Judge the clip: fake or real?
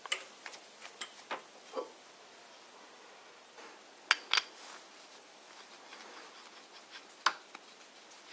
real